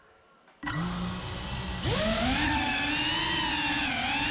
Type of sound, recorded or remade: recorded